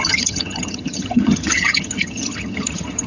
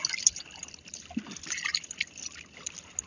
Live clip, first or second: second